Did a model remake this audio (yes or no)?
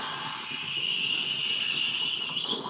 no